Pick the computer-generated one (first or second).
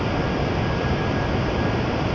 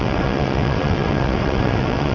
second